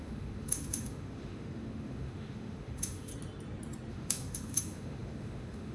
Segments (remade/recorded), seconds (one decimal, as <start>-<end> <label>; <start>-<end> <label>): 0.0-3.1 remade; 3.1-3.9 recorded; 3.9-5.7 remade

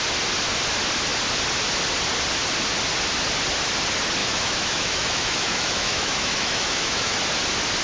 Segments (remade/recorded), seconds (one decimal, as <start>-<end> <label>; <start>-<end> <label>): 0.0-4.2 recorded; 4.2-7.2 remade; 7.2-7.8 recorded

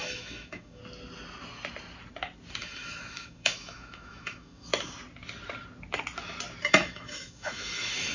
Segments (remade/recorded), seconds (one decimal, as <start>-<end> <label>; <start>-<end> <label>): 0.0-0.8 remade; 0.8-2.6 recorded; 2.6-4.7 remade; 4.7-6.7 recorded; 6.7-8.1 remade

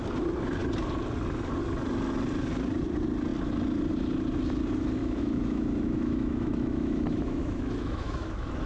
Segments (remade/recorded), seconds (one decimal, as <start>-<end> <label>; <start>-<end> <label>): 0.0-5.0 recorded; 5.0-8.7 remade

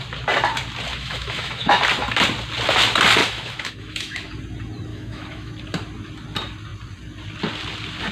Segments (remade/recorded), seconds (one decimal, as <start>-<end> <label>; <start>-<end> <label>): 0.0-0.9 recorded; 0.9-1.8 remade; 1.8-3.2 recorded; 3.2-4.3 remade; 4.3-4.9 recorded; 4.9-5.5 remade; 5.5-8.1 recorded

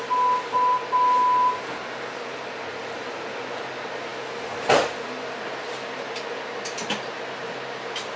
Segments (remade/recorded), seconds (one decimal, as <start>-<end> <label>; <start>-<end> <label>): 0.0-8.2 recorded

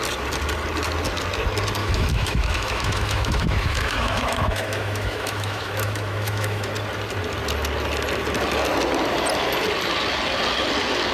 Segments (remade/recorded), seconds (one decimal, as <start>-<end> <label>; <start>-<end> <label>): 0.0-1.8 recorded; 1.8-6.7 remade; 6.7-11.1 recorded

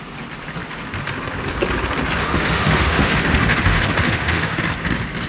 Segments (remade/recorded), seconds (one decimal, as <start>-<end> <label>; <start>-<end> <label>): 0.0-2.2 recorded; 2.2-4.7 remade; 4.7-5.3 recorded